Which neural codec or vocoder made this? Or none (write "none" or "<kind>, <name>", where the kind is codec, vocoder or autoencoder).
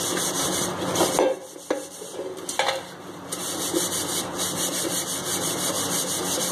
none